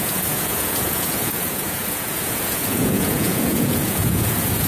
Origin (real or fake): fake